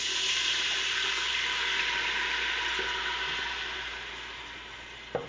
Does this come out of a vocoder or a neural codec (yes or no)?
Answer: no